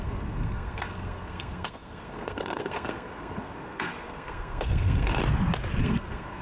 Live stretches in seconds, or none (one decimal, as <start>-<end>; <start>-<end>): 5.2-5.8